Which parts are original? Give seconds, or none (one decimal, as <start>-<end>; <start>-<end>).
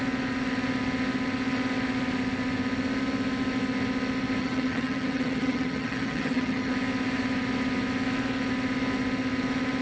0.0-4.4; 6.7-9.8